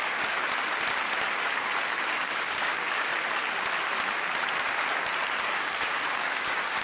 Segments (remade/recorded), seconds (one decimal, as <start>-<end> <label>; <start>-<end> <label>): 0.0-0.4 remade; 0.4-2.1 recorded; 2.1-3.1 remade; 3.1-5.4 recorded; 5.4-6.8 remade